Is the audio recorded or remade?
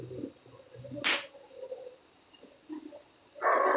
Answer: recorded